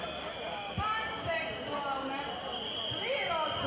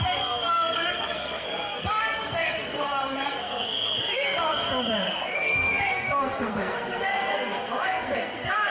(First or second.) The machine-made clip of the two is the second